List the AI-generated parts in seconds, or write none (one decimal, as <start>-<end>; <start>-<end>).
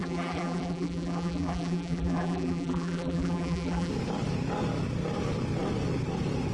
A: 0.0-3.9